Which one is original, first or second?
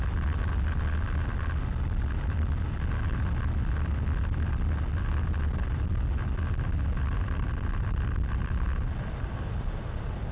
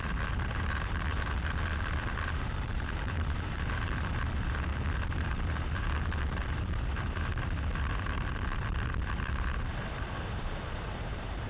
first